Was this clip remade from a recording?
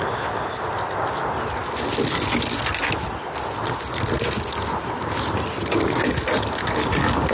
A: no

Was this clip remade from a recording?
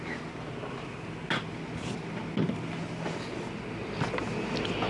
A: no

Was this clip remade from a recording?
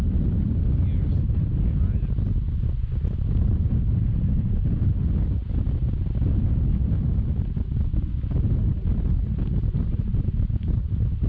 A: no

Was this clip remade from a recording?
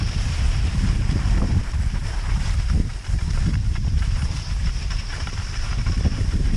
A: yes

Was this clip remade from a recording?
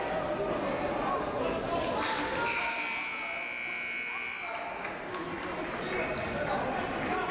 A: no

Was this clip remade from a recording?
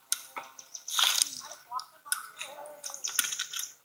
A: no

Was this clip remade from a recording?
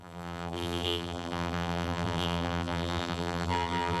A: yes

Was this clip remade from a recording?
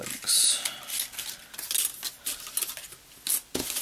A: no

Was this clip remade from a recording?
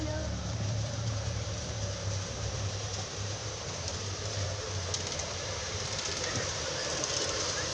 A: yes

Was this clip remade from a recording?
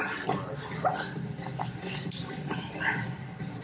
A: yes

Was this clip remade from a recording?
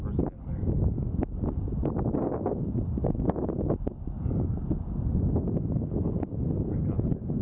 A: no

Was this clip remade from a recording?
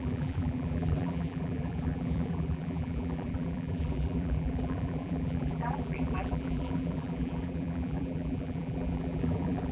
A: yes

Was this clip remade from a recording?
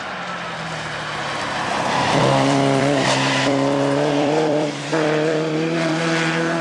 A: yes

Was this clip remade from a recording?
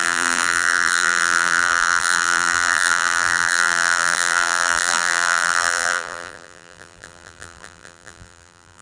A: yes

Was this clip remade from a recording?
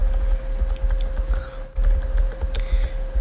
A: no